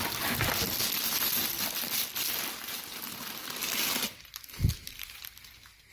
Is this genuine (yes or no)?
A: yes